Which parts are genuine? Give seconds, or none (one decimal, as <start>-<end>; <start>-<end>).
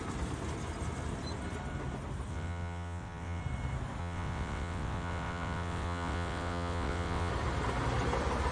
0.0-2.3; 3.4-4.0; 7.3-8.5